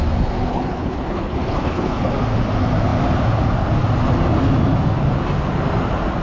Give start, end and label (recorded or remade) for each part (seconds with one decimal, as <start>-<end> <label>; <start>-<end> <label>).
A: 0.0-0.5 recorded; 0.5-2.1 remade; 2.1-6.2 recorded